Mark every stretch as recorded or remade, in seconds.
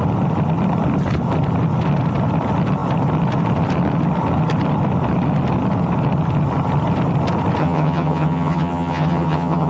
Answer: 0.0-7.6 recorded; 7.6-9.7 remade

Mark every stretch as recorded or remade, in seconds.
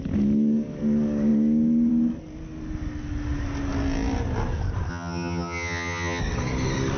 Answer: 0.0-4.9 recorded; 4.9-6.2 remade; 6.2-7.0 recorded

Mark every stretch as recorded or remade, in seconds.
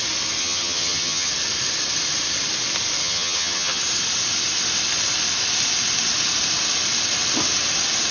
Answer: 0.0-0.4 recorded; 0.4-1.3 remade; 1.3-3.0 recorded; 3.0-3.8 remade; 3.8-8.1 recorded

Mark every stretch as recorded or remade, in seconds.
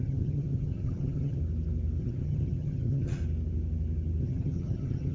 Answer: 0.0-1.4 remade; 1.4-2.0 recorded; 2.0-3.2 remade; 3.2-4.2 recorded; 4.2-5.1 remade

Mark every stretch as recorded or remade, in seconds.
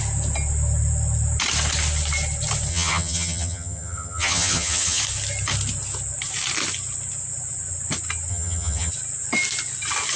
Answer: 0.0-2.7 recorded; 2.7-5.0 remade; 5.0-8.3 recorded; 8.3-8.9 remade; 8.9-10.2 recorded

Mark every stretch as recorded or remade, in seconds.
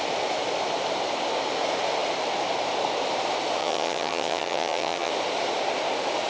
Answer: 0.0-3.6 recorded; 3.6-5.1 remade; 5.1-6.3 recorded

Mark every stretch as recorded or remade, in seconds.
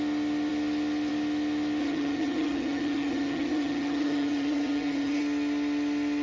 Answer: 0.0-1.8 recorded; 1.8-5.2 remade; 5.2-6.2 recorded